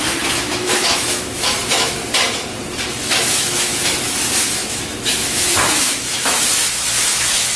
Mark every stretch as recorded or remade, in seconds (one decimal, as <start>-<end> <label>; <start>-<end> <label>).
0.0-2.0 remade; 2.0-2.9 recorded; 2.9-7.6 remade